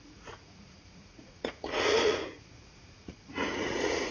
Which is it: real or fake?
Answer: fake